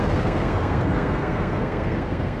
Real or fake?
fake